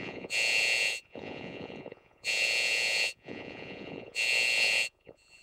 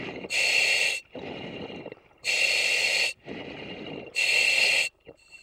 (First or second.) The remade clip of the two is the first